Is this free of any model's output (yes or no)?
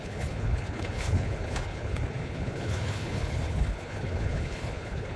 no